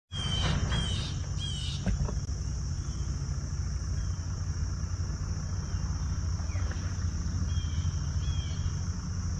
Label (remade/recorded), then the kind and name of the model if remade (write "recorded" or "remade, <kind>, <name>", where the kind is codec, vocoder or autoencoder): recorded